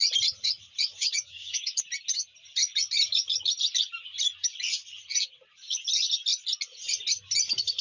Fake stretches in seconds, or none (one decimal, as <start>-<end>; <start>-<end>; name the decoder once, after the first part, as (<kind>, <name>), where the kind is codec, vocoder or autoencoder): 0.9-1.8 (codec, DAC)

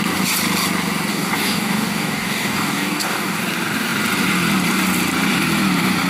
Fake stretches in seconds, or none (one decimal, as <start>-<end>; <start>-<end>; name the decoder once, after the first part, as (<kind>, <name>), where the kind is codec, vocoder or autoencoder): 1.1-3.4 (codec, DAC)

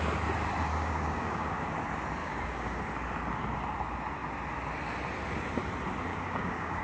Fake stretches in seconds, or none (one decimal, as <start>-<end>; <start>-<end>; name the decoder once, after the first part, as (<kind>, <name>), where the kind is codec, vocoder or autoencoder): 0.7-1.7 (codec, DAC); 2.2-2.8; 6.1-6.8

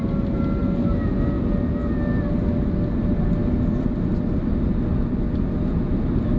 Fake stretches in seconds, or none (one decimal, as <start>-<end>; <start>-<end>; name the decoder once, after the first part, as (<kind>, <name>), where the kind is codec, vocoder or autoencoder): none

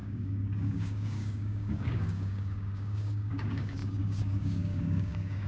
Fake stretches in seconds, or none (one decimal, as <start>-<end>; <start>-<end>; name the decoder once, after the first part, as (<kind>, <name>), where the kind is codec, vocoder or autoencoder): 0.0-5.5 (codec, DAC)

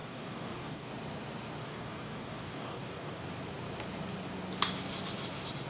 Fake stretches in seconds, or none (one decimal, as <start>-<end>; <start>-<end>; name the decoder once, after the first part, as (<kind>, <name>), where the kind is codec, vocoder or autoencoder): 0.0-0.9 (codec, DAC); 1.6-3.2

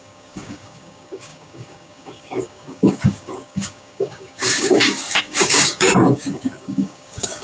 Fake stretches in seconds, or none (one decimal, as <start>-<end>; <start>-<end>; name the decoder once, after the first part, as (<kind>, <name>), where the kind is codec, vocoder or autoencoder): 0.0-7.4 (codec, DAC)

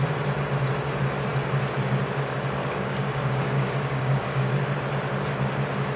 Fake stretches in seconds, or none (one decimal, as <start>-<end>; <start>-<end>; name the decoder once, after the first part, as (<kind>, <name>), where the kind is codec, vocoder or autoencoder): 2.6-4.5 (codec, DAC)